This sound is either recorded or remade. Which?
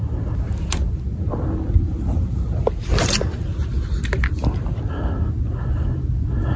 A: recorded